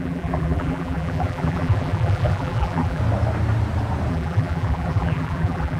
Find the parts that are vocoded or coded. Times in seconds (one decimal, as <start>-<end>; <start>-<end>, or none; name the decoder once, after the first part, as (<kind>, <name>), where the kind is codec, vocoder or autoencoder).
0.0-3.0 (vocoder, BigVGAN v2); 4.1-5.8